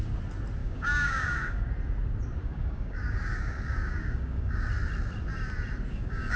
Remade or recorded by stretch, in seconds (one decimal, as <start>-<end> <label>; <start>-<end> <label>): 0.0-0.6 recorded; 0.6-1.7 remade; 1.7-2.4 recorded; 2.4-4.7 remade; 4.7-5.9 recorded; 5.9-6.4 remade